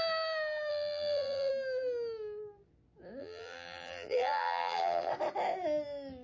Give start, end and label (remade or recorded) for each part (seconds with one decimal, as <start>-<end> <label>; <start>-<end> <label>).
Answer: 0.0-0.7 recorded; 0.7-1.5 remade; 1.5-3.2 recorded; 3.2-5.1 remade; 5.1-6.2 recorded